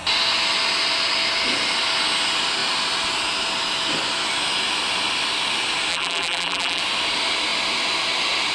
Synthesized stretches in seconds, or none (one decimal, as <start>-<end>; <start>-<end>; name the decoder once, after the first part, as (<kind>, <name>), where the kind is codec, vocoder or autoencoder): 5.9-6.8 (vocoder, BigVGAN v2)